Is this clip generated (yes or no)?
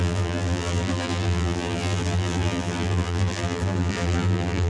yes